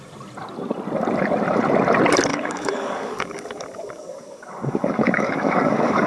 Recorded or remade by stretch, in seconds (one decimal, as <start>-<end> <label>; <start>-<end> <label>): 0.0-2.3 recorded; 2.3-6.1 remade